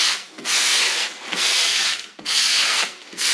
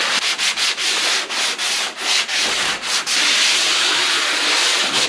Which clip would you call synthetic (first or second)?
first